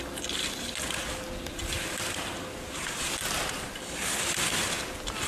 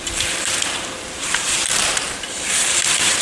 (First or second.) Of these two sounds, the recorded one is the first